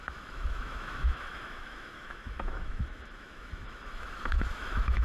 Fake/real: fake